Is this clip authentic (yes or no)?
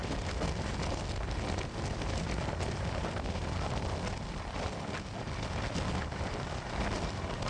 yes